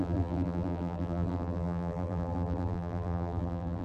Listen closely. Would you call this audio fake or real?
fake